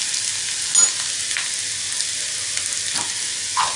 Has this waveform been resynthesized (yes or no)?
no